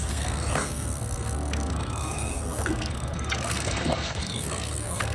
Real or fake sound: fake